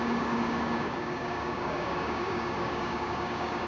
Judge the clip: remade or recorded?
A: remade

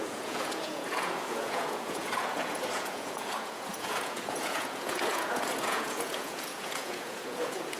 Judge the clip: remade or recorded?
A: remade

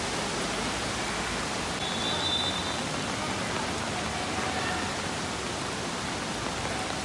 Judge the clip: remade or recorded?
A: recorded